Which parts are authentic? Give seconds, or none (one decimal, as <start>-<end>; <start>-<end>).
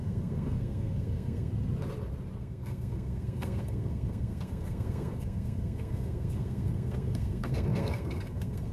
1.5-2.4